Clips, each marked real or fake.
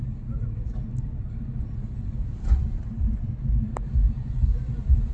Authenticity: real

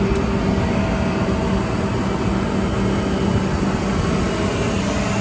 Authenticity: real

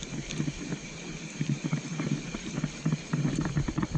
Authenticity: real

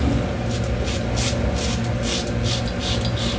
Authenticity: real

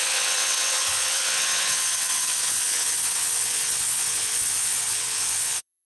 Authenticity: fake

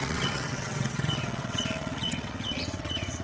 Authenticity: fake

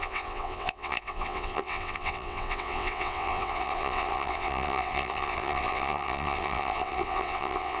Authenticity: fake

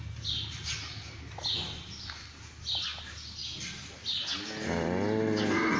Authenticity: real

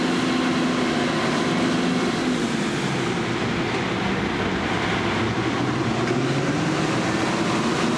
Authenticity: real